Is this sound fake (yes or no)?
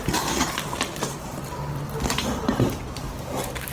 no